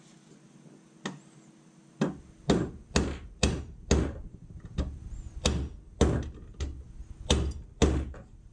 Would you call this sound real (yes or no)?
yes